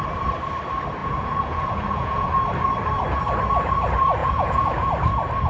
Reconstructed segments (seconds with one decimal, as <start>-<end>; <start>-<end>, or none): 1.0-2.3; 4.2-4.9